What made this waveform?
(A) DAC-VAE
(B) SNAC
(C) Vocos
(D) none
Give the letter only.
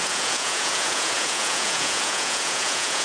C